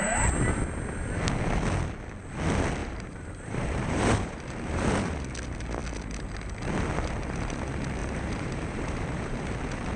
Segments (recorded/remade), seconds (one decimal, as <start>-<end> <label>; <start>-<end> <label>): 0.0-2.8 recorded; 2.8-4.8 remade; 4.8-8.0 recorded; 8.0-9.6 remade; 9.6-10.0 recorded